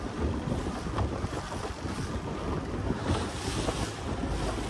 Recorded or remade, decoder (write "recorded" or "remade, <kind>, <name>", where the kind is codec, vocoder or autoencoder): recorded